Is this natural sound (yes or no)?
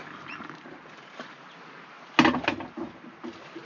yes